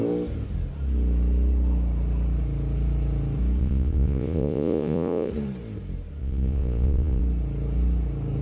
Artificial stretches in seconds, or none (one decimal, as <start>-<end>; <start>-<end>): 3.6-5.3; 6.2-7.2